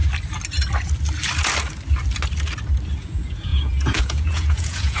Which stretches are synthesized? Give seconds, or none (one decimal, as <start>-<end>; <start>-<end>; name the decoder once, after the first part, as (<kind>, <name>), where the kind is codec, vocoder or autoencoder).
3.0-5.0 (vocoder, Vocos)